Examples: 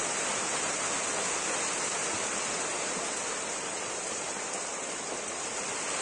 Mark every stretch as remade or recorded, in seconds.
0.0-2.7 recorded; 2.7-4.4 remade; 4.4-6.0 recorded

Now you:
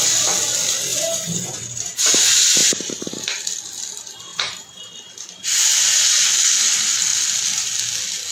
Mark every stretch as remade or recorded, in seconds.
0.0-0.9 recorded; 0.9-2.2 remade; 2.2-2.6 recorded; 2.6-3.2 remade; 3.2-4.3 recorded; 4.3-4.8 remade; 4.8-8.3 recorded